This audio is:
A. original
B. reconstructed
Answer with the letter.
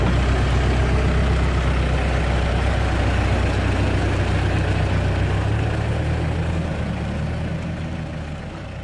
A